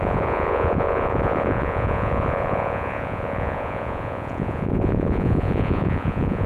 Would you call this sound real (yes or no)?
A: no